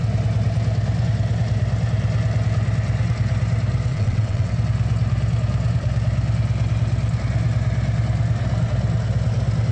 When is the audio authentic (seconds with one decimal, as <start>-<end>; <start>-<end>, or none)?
0.0-3.9; 4.5-9.7